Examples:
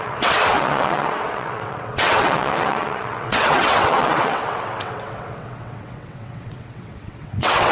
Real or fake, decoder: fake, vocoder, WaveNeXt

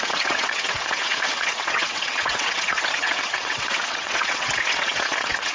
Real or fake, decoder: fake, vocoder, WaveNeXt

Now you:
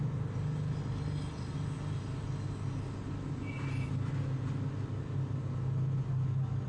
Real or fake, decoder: real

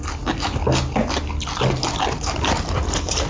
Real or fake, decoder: real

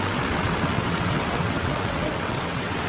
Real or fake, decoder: fake, vocoder, WaveNeXt